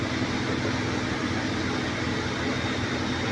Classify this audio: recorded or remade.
recorded